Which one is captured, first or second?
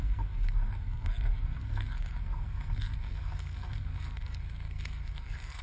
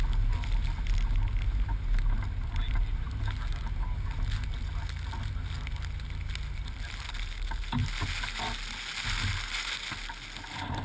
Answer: second